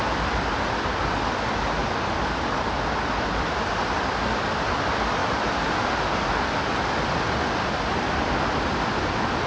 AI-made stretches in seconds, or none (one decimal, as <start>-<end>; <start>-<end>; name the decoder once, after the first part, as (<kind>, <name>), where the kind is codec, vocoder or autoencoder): 1.8-3.7 (vocoder, BigVGAN v2); 5.2-6.0